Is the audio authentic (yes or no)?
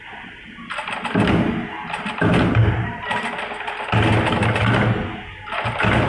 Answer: yes